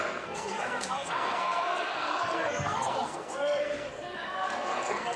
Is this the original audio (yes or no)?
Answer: no